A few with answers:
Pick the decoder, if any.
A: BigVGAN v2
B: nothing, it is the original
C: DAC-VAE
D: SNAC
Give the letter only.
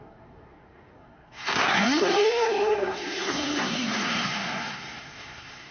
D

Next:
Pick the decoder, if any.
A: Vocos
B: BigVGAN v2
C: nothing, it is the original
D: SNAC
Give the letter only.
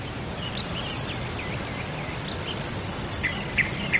C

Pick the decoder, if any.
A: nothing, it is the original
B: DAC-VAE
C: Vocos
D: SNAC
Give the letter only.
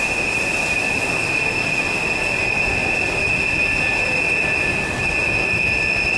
A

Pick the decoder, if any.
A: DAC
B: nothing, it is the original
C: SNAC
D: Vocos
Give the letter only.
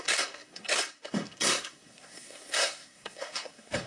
C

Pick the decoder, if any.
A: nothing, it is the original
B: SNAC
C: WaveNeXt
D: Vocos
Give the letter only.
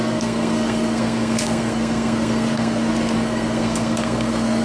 B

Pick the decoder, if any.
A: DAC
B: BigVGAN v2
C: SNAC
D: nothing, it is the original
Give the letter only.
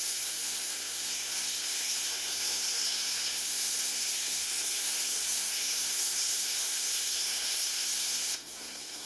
C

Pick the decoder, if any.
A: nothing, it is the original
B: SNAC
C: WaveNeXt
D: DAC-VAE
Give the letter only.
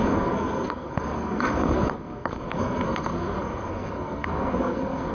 B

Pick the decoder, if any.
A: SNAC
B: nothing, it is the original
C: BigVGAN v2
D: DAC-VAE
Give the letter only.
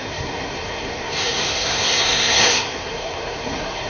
A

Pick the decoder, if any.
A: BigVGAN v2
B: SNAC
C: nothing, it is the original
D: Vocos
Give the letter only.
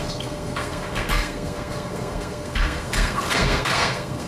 B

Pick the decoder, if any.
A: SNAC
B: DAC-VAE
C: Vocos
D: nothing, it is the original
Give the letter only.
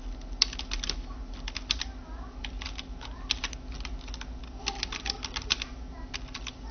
D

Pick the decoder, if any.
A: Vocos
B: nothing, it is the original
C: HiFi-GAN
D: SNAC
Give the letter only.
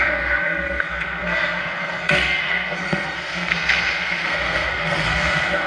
D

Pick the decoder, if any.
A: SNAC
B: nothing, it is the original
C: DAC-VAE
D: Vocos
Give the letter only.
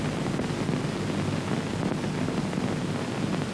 B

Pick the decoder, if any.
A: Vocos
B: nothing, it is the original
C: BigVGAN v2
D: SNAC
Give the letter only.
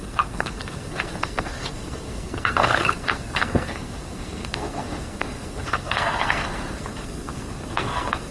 D